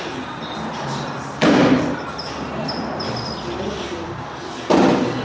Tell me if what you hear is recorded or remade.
remade